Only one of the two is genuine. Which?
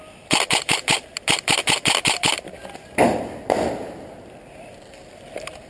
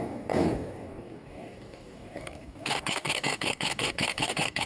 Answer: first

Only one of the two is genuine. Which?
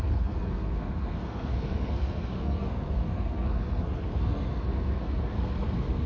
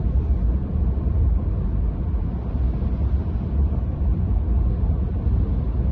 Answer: second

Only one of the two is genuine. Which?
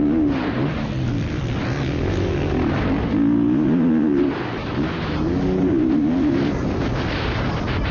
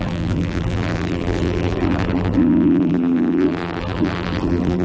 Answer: first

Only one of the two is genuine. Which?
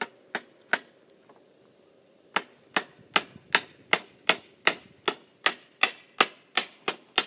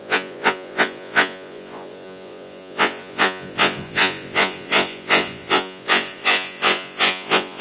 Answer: first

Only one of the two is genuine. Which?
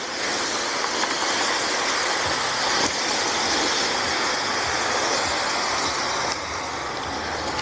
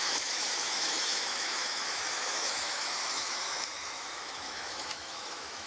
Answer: first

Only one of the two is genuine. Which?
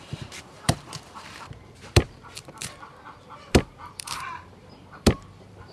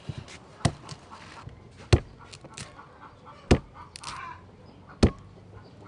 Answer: second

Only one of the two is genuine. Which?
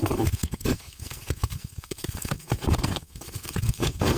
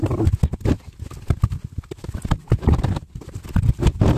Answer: second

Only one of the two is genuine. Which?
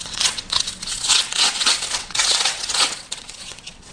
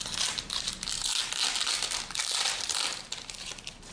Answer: second